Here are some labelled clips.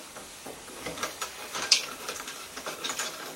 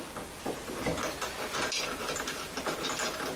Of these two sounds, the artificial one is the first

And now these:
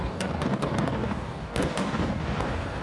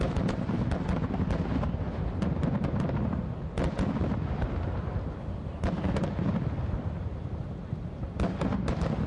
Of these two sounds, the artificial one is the first